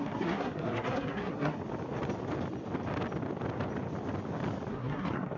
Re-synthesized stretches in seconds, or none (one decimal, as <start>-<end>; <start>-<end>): 0.0-1.6; 4.7-5.4